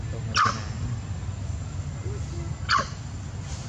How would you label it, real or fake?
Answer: real